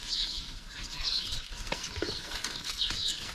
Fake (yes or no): yes